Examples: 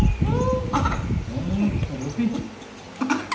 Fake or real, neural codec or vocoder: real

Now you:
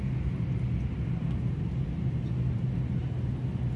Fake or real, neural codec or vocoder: real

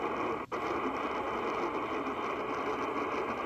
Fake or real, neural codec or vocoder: real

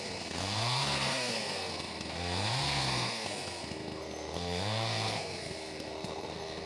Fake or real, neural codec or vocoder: fake, codec, SNAC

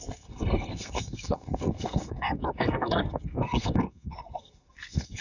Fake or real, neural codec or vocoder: fake, codec, SNAC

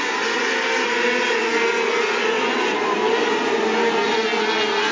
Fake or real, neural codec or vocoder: real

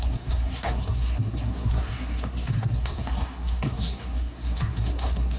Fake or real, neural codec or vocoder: fake, codec, SNAC